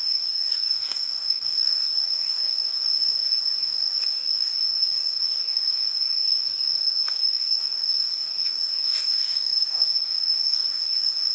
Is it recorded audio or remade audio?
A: remade